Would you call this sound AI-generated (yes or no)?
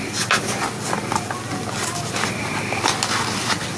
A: no